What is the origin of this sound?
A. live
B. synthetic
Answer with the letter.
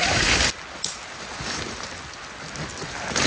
A